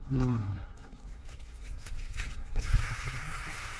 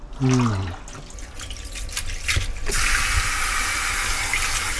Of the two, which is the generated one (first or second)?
first